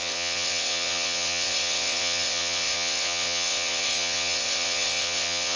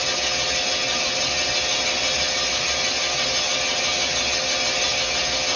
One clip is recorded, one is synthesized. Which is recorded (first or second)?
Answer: second